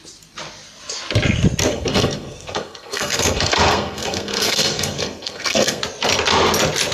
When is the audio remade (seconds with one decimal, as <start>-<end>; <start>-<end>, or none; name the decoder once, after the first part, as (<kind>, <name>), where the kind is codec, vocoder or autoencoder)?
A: 1.7-5.8 (codec, SNAC)